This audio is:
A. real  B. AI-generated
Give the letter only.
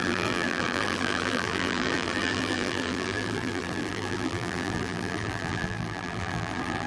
B